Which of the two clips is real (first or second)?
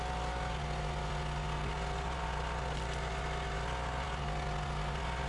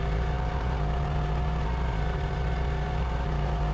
first